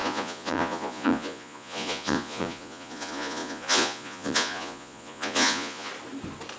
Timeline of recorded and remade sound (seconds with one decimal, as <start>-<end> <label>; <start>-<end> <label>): 0.0-5.9 remade; 5.9-6.6 recorded

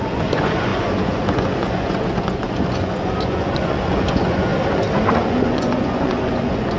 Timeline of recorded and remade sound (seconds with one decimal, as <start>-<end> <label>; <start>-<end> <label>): 0.0-4.5 remade; 4.5-5.1 recorded; 5.1-6.8 remade

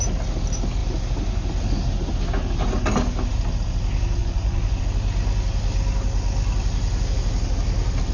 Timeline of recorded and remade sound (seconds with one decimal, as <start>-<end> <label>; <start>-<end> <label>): 0.0-4.2 recorded; 4.2-4.8 remade; 4.8-8.1 recorded